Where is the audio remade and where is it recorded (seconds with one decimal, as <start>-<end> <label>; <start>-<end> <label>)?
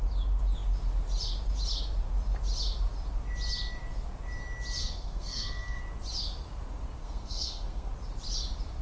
0.0-4.8 recorded; 4.8-5.8 remade; 5.8-7.0 recorded; 7.0-7.9 remade; 7.9-8.8 recorded